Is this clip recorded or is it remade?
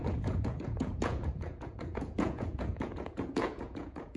remade